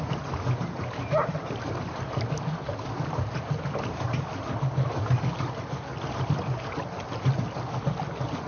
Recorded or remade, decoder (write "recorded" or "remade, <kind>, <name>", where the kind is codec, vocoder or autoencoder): recorded